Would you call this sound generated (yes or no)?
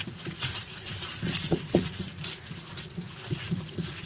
yes